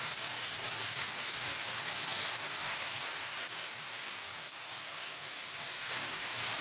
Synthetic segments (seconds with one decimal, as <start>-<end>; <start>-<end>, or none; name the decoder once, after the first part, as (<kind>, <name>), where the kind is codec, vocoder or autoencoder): 0.0-6.6 (codec, DAC)